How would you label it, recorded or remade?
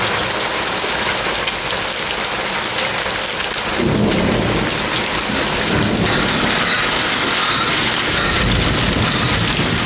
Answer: recorded